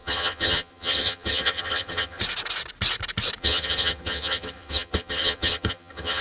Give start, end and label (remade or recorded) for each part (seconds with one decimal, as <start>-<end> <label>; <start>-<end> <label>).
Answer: 0.0-2.2 remade; 2.2-3.4 recorded; 3.4-6.2 remade